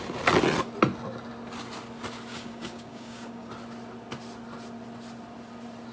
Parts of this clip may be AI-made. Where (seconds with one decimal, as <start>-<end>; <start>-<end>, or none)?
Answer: 2.3-3.5